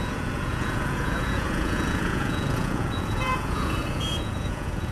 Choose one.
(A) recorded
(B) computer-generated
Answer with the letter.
B